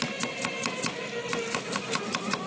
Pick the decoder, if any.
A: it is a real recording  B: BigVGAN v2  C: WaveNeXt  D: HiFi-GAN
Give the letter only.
A